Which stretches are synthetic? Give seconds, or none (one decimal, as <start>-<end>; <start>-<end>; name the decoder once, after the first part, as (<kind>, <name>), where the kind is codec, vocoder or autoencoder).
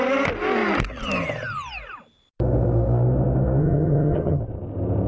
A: 3.6-4.4 (vocoder, HiFi-GAN)